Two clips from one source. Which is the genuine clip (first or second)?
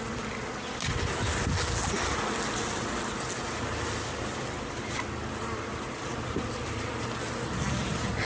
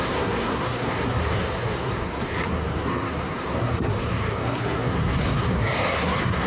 first